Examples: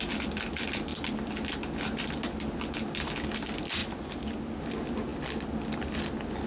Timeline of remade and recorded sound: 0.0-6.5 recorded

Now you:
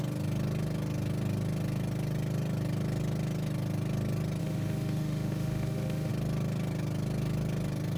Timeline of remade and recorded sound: 0.0-4.4 recorded; 4.4-6.1 remade; 6.1-8.0 recorded

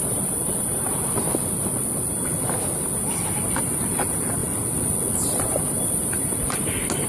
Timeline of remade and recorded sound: 0.0-1.3 remade; 1.3-3.6 recorded; 3.6-4.4 remade; 4.4-5.2 recorded; 5.2-7.1 remade

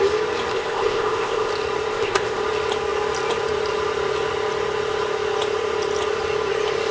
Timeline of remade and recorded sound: 0.0-0.5 recorded; 0.5-1.5 remade; 1.5-1.9 recorded; 1.9-2.4 remade; 2.4-6.9 recorded

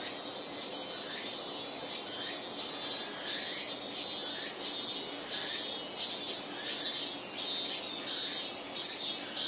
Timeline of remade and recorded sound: 0.0-9.5 recorded

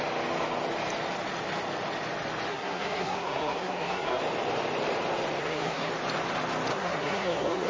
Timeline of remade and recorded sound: 0.0-2.5 recorded; 2.5-4.2 remade; 4.2-5.4 recorded; 5.4-5.9 remade; 5.9-6.7 recorded; 6.7-7.7 remade